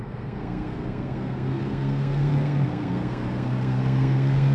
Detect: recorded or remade remade